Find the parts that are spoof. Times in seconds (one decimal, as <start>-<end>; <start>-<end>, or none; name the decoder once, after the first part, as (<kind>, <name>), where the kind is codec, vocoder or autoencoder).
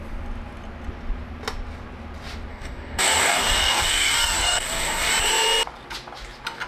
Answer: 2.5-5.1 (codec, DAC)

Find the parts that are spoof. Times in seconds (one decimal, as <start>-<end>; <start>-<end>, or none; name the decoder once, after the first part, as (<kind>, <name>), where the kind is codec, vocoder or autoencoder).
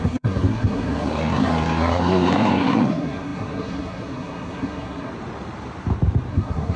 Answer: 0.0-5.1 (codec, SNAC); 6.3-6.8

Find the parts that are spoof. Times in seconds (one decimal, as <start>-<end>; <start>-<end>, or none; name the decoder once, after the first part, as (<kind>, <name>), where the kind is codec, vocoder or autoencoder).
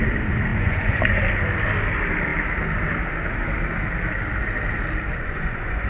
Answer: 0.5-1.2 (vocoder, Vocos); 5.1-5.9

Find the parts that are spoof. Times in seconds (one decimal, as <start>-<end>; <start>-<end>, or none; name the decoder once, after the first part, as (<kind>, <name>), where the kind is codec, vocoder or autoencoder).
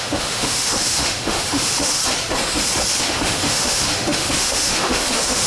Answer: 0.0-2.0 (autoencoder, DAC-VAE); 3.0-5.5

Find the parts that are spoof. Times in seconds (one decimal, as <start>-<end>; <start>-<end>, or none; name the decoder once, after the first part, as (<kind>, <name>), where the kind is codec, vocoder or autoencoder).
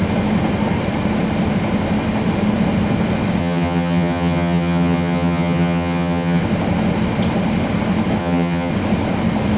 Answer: 3.4-6.4 (vocoder, HiFi-GAN); 8.2-8.7